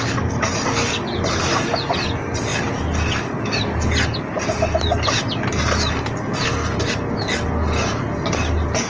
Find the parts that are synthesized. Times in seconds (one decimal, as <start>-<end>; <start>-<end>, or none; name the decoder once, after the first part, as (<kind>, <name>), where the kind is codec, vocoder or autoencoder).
none